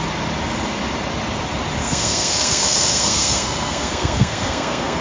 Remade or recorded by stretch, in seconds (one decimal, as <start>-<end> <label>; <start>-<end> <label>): 0.0-1.8 recorded; 1.8-5.0 remade